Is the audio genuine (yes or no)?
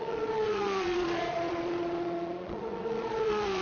no